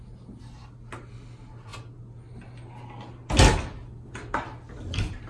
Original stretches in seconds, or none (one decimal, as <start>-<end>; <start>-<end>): 0.0-5.3